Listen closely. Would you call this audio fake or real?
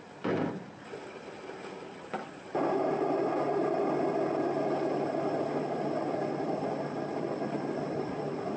real